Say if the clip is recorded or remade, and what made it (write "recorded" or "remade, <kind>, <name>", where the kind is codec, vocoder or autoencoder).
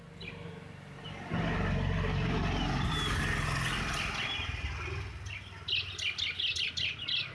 recorded